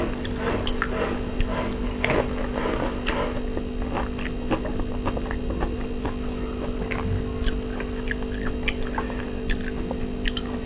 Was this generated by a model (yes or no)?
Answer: no